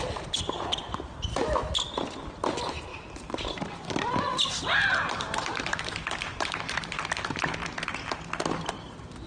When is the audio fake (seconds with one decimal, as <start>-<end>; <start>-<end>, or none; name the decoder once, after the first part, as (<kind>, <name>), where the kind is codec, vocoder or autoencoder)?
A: 2.9-7.2 (vocoder, BigVGAN v2)